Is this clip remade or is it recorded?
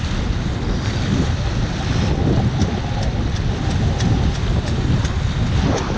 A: recorded